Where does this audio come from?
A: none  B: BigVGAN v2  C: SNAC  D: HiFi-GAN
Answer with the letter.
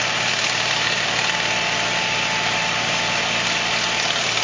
A